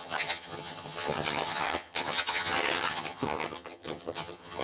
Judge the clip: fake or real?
fake